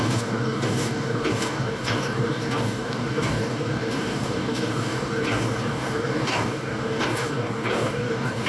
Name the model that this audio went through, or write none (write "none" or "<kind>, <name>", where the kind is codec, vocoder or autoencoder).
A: codec, DAC